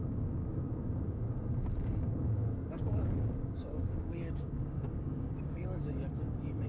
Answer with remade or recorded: remade